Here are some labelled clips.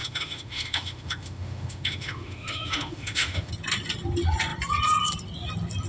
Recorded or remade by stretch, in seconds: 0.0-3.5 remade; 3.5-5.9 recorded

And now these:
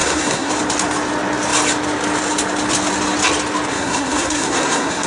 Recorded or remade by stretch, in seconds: 0.0-0.5 remade; 0.5-3.7 recorded; 3.7-5.1 remade

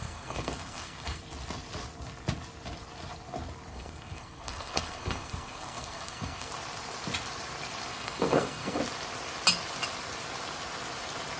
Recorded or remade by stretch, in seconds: 0.0-1.2 remade; 1.2-3.7 recorded; 3.7-6.5 remade; 6.5-7.9 recorded; 7.9-8.8 remade; 8.8-11.4 recorded

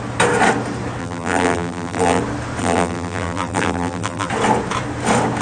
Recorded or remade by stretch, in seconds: 0.0-1.0 recorded; 1.0-2.2 remade; 2.2-2.6 recorded; 2.6-4.3 remade; 4.3-5.4 recorded

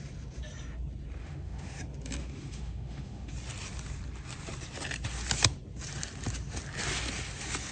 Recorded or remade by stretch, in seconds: 0.0-1.2 recorded; 1.2-1.8 remade; 1.8-2.2 recorded; 2.2-3.3 remade; 3.3-7.7 recorded

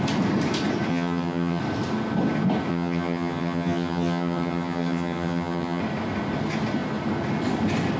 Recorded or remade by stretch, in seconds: 0.0-0.9 recorded; 0.9-1.6 remade; 1.6-2.7 recorded; 2.7-5.8 remade; 5.8-8.0 recorded